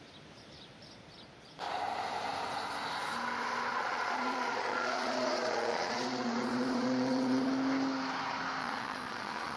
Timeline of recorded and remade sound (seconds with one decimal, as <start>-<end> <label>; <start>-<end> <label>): 0.0-3.7 recorded; 3.7-7.5 remade; 7.5-8.6 recorded; 8.6-9.6 remade